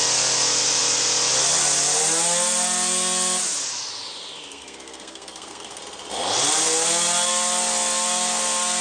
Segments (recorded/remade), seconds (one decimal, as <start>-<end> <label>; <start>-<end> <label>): 0.0-4.5 recorded; 4.5-5.8 remade; 5.8-8.8 recorded